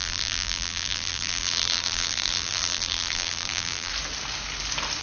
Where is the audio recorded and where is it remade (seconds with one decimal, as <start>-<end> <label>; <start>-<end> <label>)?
0.0-3.9 remade; 3.9-5.0 recorded